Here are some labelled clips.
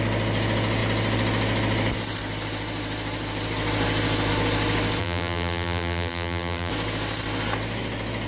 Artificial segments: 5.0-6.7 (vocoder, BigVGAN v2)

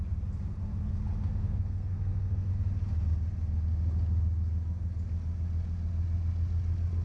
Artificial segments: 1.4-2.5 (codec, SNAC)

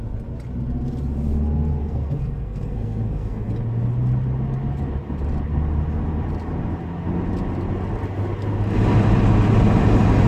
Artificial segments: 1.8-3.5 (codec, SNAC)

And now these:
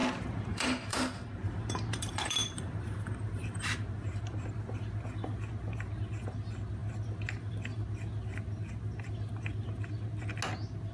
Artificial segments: 0.0-4.2 (vocoder, BigVGAN v2)

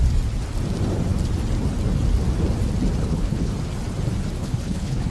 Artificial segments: 3.0-3.5 (codec, HILCodec); 4.4-5.1